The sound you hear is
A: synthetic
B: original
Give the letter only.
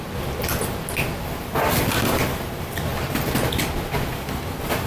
B